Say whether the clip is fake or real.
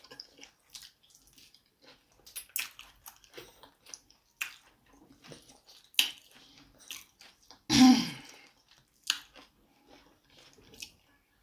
real